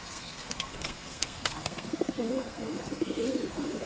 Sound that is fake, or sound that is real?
fake